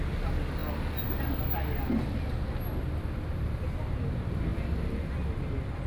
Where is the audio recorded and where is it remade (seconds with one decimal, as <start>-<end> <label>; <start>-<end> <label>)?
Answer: 0.0-5.9 recorded

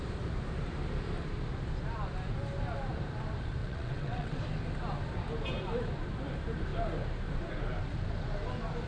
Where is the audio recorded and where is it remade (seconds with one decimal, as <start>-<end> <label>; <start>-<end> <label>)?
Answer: 0.0-3.6 recorded; 3.6-4.4 remade; 4.4-8.9 recorded

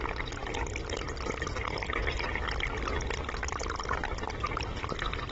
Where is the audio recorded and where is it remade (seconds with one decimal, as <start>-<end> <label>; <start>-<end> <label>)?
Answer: 0.0-5.3 recorded

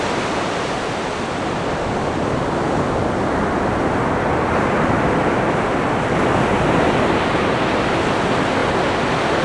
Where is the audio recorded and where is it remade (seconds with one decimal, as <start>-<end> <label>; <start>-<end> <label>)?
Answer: 0.0-9.4 recorded

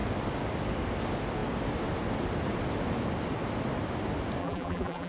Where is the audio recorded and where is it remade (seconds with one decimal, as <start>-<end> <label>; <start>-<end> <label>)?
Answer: 0.0-4.4 recorded; 4.4-5.1 remade